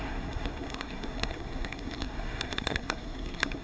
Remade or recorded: remade